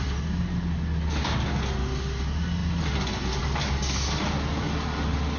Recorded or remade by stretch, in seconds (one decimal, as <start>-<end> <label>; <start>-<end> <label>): 0.0-5.4 recorded